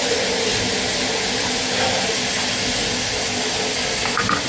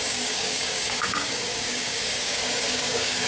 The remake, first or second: second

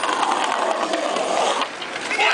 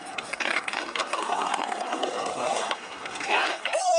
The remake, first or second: second